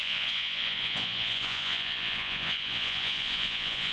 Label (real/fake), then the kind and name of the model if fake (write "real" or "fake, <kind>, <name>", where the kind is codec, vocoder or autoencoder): fake, vocoder, Vocos